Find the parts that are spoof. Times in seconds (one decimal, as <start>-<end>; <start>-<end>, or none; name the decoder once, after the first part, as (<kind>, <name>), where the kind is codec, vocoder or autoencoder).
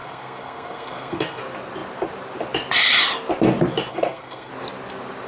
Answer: 0.0-1.4 (codec, SNAC); 3.9-4.5